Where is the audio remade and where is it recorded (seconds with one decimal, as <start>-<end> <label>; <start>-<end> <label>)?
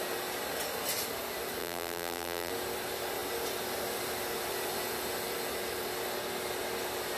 0.0-1.6 recorded; 1.6-2.5 remade; 2.5-7.2 recorded